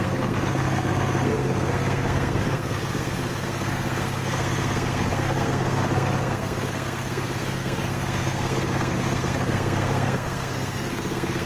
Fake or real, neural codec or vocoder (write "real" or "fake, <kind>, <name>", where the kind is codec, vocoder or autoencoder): fake, codec, SNAC